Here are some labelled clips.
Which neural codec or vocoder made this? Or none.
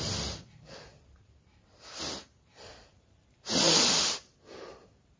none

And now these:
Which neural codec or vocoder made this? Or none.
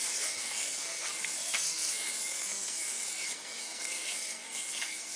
codec, SNAC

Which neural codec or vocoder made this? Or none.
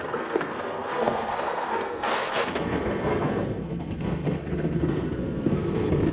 codec, SNAC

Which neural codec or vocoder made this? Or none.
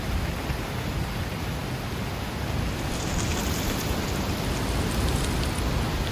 none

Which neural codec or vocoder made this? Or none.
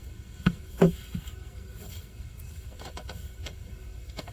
codec, SNAC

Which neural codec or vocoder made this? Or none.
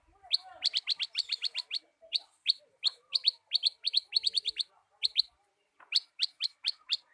none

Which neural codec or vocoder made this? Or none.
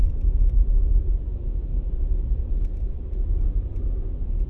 none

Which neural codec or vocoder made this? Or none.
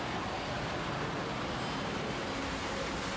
none